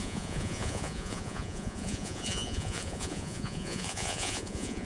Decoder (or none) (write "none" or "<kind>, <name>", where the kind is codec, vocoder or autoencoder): vocoder, Vocos